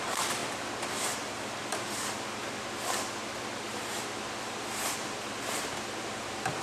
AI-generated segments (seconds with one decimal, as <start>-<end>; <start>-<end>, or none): 0.0-0.4; 4.4-6.6